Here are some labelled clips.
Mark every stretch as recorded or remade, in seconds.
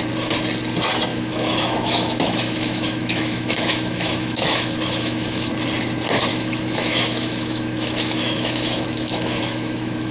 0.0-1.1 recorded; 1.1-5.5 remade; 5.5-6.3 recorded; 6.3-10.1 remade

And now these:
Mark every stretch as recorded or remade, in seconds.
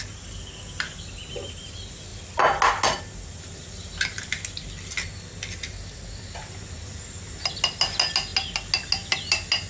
0.0-9.7 recorded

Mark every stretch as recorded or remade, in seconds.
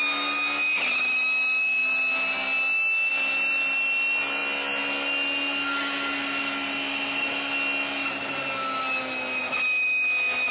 0.0-10.5 recorded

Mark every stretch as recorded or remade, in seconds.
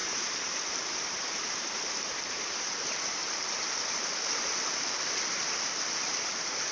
0.0-4.0 remade; 4.0-6.7 recorded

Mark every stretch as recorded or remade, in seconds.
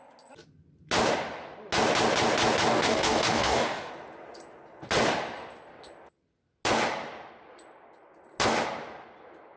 0.0-2.7 recorded; 2.7-3.9 remade; 3.9-9.6 recorded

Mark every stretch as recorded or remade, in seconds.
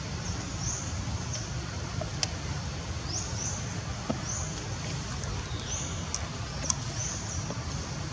0.0-8.1 recorded